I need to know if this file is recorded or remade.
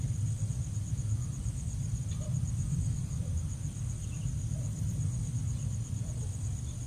recorded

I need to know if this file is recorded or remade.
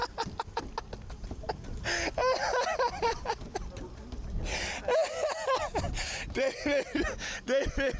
recorded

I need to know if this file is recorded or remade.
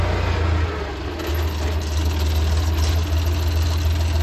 recorded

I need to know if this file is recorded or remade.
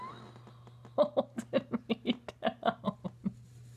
recorded